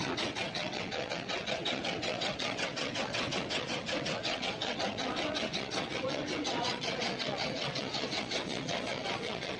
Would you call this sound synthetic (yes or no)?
yes